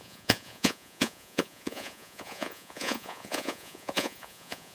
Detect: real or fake fake